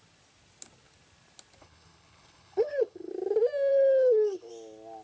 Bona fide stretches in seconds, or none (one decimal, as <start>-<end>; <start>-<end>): 0.0-1.6; 3.1-3.7; 4.5-5.0